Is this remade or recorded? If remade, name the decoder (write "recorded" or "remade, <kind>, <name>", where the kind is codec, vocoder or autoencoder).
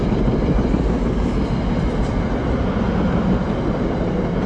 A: recorded